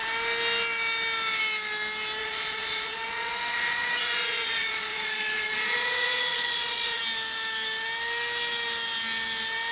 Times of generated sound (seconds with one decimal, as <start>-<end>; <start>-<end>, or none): 2.2-7.0